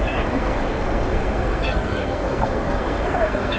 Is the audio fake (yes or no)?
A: yes